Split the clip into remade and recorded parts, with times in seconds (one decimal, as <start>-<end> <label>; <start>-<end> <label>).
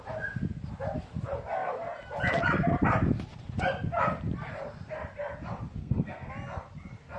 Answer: 0.0-5.8 recorded; 5.8-6.3 remade; 6.3-7.2 recorded